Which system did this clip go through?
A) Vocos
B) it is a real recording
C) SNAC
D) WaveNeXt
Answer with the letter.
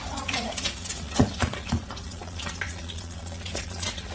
A